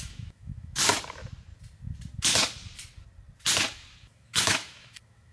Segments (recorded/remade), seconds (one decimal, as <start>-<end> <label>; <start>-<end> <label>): 0.0-0.8 remade; 0.8-4.0 recorded; 4.0-5.3 remade